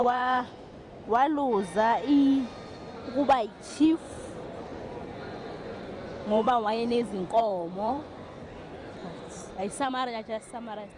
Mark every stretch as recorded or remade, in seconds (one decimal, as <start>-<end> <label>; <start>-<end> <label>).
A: 0.0-0.9 remade; 0.9-3.7 recorded; 3.7-4.3 remade; 4.3-4.7 recorded; 4.7-8.4 remade; 8.4-9.0 recorded; 9.0-9.9 remade; 9.9-11.0 recorded